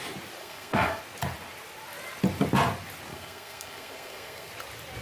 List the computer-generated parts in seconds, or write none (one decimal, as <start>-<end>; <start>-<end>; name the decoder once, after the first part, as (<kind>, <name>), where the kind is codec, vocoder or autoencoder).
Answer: 0.4-1.0 (codec, SNAC); 3.1-4.5